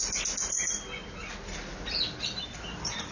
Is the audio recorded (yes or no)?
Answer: yes